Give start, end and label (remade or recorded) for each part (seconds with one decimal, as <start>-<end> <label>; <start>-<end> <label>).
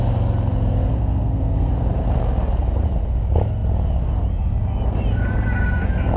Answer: 0.0-0.9 recorded; 0.9-1.7 remade; 1.7-6.2 recorded